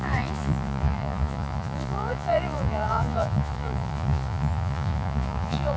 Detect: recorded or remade remade